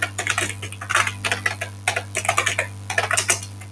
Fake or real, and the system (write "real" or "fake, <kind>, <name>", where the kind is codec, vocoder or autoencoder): real